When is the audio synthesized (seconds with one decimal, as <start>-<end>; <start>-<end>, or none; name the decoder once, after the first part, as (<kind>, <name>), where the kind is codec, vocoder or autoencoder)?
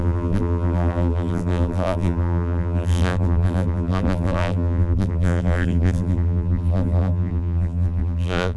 0.0-8.6 (vocoder, BigVGAN v2)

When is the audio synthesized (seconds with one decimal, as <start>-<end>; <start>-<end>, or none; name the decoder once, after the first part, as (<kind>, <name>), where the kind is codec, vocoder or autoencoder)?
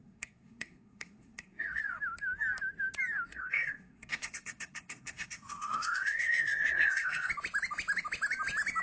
0.0-1.8 (codec, SNAC); 3.3-7.3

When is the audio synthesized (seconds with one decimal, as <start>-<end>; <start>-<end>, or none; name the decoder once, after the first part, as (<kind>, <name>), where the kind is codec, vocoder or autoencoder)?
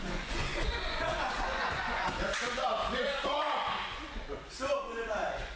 0.0-5.6 (vocoder, Vocos)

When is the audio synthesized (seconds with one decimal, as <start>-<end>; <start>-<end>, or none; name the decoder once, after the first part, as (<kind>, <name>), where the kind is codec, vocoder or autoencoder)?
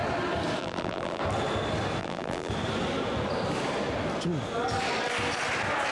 0.6-1.2 (vocoder, BigVGAN v2); 2.0-2.5